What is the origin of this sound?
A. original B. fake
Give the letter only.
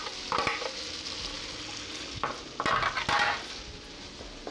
A